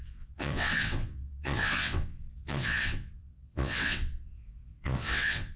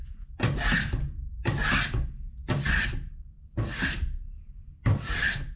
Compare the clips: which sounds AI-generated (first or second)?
first